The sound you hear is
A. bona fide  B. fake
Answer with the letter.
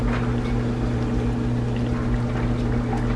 A